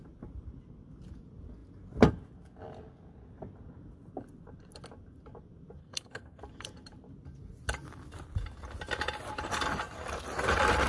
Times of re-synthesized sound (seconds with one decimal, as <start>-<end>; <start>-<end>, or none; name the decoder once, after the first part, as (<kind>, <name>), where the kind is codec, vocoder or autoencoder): 5.8-6.4 (codec, SNAC)